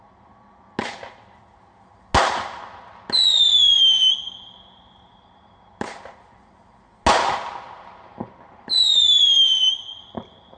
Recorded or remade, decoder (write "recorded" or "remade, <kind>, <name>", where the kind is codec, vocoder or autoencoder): recorded